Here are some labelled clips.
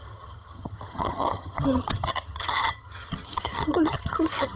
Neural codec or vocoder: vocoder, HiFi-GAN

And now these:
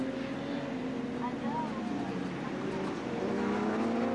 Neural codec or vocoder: none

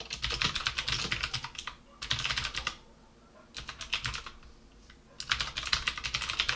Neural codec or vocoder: none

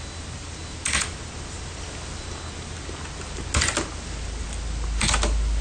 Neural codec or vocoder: none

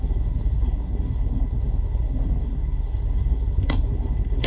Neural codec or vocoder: codec, SNAC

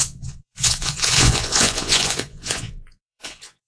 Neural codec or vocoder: vocoder, Vocos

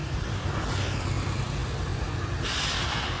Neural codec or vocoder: none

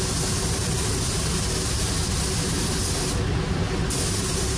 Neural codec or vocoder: none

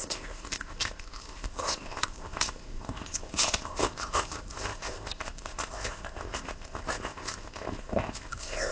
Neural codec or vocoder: codec, ZipCodec